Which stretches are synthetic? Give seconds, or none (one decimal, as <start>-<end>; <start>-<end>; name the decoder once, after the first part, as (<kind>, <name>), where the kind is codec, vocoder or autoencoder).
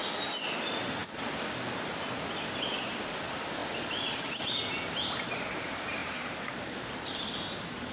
6.0-7.2 (vocoder, BigVGAN v2)